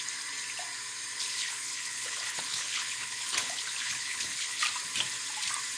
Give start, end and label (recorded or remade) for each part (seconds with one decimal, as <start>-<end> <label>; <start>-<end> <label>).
0.0-1.1 recorded; 1.1-4.6 remade; 4.6-5.8 recorded